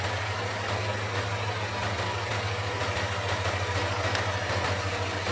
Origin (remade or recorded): recorded